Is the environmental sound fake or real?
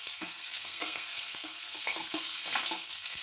fake